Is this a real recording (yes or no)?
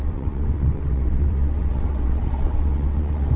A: no